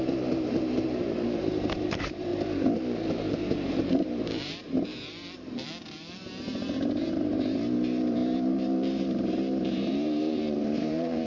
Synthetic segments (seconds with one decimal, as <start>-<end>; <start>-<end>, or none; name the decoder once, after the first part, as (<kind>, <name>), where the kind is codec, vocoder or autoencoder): 0.0-2.3 (vocoder, BigVGAN v2); 3.3-11.3